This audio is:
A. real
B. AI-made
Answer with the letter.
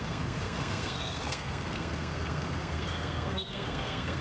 B